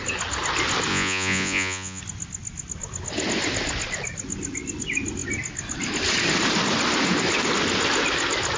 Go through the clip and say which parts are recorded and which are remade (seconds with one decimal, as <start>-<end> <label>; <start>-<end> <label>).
0.0-0.9 recorded; 0.9-2.0 remade; 2.0-8.6 recorded